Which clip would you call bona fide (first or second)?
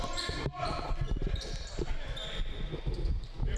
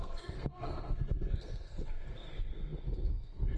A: first